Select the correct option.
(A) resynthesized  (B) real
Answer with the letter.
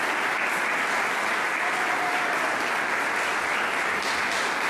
B